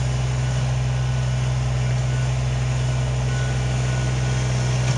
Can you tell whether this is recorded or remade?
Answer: recorded